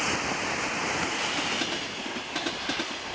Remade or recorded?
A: recorded